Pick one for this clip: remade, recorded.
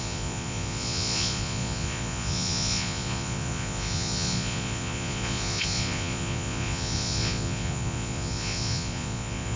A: remade